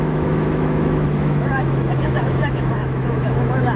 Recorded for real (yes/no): no